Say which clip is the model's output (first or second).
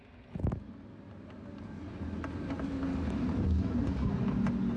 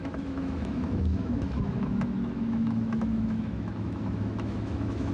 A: second